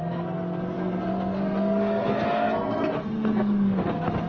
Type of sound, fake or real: fake